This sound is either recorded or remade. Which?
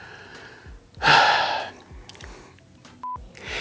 recorded